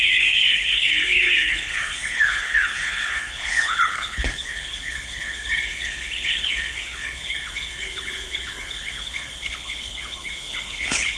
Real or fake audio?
fake